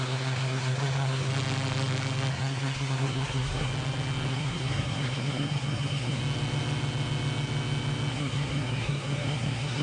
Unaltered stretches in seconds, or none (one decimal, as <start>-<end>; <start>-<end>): 1.3-2.3; 3.7-4.3; 6.2-8.1

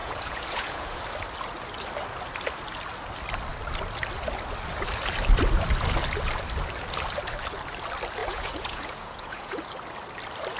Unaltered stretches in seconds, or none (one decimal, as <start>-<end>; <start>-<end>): 1.0-8.2; 9.6-10.6

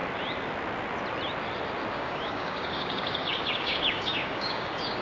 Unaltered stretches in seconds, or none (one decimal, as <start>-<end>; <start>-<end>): 0.0-1.9

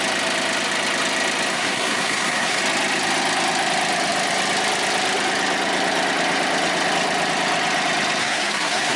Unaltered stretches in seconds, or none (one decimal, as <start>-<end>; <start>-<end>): 0.0-1.5; 2.6-8.2

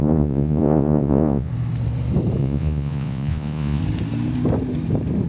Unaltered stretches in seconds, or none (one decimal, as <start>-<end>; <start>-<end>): 1.5-2.4; 3.8-5.3